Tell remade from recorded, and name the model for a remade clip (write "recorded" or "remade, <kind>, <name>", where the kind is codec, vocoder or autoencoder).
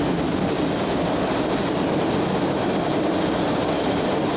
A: recorded